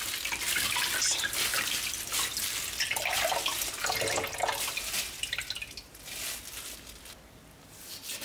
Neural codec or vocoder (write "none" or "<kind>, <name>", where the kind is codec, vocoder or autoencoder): none